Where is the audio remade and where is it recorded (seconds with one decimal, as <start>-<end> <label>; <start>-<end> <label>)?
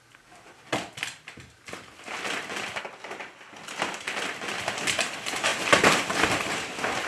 0.0-7.1 recorded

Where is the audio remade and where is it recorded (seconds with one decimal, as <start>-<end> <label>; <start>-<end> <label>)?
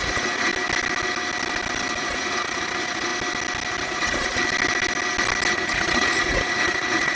0.0-0.5 remade; 0.5-2.0 recorded; 2.0-3.1 remade; 3.1-3.8 recorded; 3.8-4.4 remade; 4.4-5.5 recorded; 5.5-7.2 remade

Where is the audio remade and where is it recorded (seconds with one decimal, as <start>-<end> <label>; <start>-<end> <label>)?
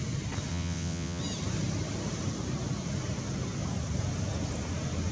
0.0-0.5 recorded; 0.5-1.2 remade; 1.2-5.1 recorded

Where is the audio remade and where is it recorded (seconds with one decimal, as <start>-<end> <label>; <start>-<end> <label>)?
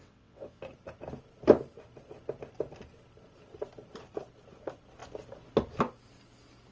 0.0-0.6 remade; 0.6-6.7 recorded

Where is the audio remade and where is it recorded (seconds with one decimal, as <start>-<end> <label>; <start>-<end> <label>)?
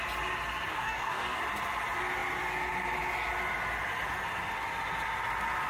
0.0-0.7 recorded; 0.7-1.4 remade; 1.4-5.7 recorded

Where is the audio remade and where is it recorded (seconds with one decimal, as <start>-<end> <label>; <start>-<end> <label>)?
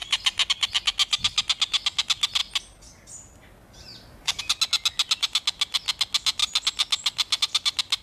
0.0-8.0 recorded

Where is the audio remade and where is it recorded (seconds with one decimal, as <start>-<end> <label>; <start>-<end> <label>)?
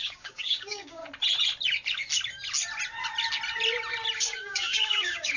0.0-1.0 remade; 1.0-4.2 recorded; 4.2-5.4 remade